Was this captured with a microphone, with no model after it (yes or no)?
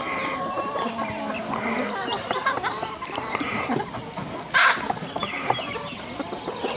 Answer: yes